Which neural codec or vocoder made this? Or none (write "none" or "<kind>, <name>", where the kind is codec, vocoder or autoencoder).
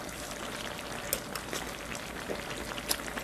none